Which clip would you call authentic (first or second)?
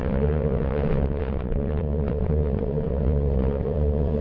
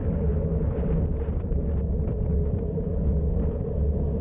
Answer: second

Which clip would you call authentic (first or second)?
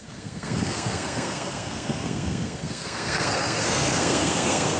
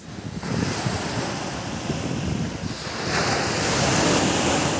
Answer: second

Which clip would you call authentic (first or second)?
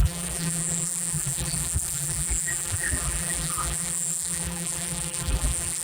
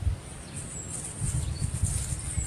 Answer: second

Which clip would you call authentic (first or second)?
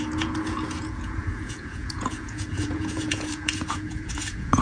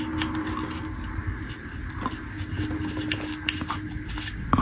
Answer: second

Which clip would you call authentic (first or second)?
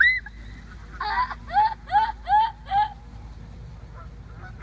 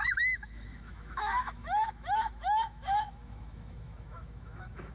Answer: first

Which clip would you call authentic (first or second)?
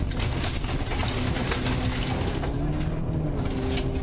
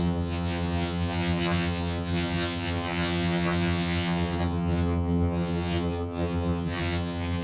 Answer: first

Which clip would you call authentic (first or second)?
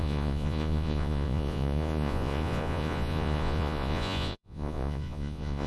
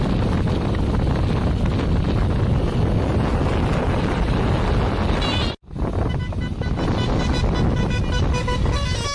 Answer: second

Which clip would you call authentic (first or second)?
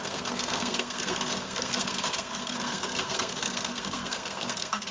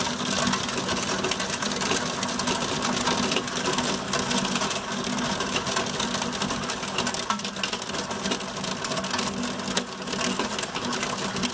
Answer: second